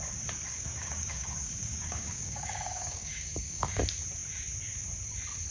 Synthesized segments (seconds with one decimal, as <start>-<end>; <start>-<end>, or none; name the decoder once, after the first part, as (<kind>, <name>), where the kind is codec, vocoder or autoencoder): 0.5-3.8 (codec, DAC)